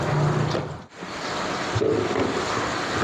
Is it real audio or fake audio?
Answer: real